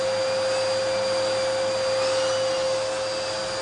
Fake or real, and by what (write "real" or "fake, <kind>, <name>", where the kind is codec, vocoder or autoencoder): real